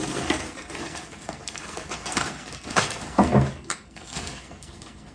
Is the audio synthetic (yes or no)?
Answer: yes